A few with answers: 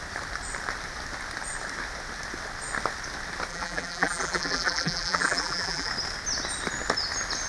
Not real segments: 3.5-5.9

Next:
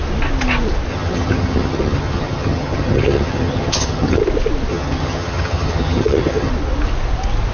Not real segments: 0.9-4.2; 4.7-6.5

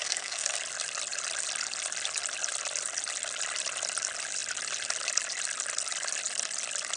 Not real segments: 0.0-0.6

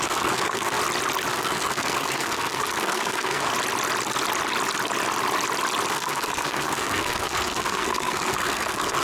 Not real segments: 0.0-0.8; 1.3-3.5; 5.9-9.0